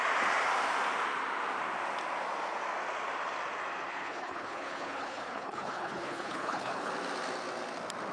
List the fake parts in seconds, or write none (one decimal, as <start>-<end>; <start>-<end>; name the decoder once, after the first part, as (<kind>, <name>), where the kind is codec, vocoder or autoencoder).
3.9-6.9 (codec, HILCodec)